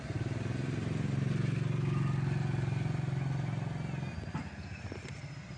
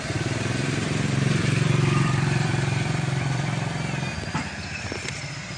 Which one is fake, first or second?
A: second